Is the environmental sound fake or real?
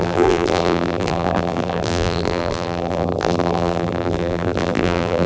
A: fake